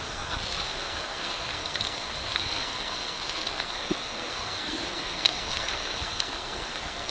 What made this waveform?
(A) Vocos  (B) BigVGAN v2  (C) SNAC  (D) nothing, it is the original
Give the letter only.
C